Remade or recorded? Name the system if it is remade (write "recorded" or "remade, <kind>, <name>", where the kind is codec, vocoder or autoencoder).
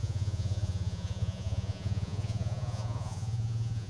remade, vocoder, Vocos